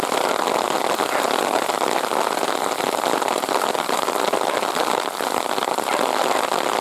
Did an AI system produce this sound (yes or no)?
no